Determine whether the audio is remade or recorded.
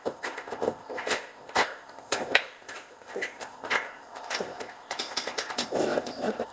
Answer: remade